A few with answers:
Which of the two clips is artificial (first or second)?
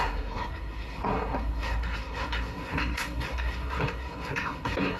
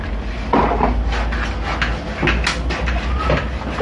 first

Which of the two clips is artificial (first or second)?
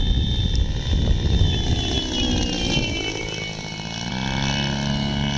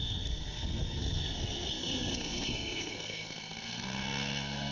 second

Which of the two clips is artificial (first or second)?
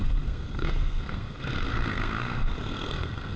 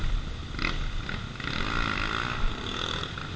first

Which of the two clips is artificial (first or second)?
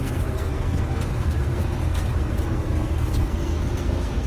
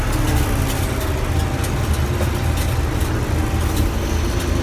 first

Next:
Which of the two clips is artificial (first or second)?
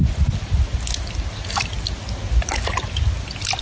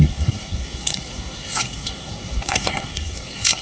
second